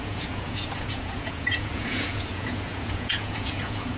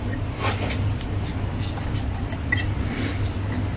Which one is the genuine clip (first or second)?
second